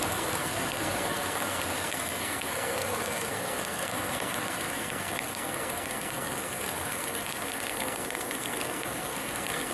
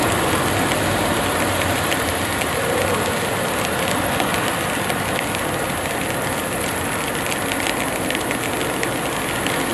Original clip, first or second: second